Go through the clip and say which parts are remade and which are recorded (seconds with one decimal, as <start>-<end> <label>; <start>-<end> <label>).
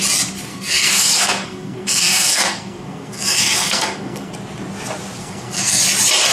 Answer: 0.0-0.5 recorded; 0.5-4.3 remade; 4.3-5.2 recorded; 5.2-5.8 remade; 5.8-6.3 recorded